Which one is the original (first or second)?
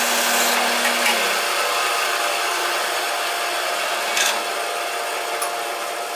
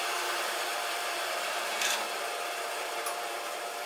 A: first